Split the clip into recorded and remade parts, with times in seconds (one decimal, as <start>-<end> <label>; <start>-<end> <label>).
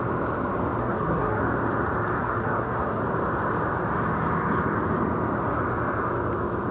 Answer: 0.0-0.8 recorded; 0.8-1.4 remade; 1.4-2.2 recorded; 2.2-3.0 remade; 3.0-6.7 recorded